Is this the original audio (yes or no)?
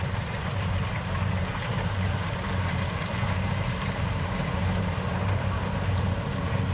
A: no